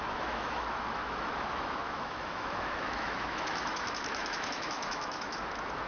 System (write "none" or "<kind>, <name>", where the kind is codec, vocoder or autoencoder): autoencoder, DAC-VAE